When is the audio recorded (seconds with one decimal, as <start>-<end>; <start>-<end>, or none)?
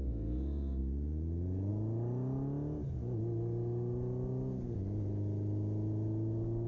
0.0-6.7